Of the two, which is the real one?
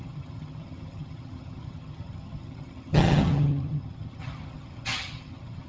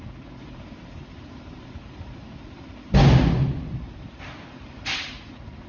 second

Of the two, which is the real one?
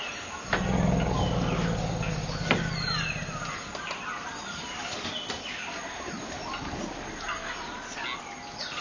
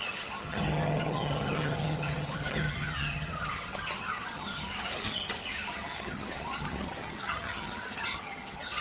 first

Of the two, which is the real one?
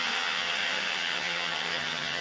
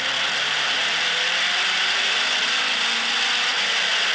second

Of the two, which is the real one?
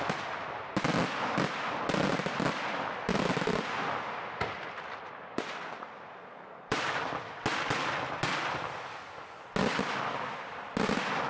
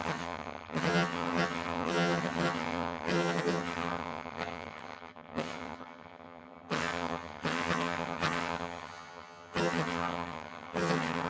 first